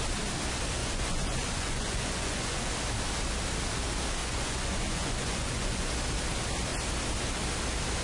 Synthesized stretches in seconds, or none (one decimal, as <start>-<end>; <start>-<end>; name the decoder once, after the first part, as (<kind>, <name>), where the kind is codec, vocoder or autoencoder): 0.8-2.7 (vocoder, Vocos); 4.2-5.9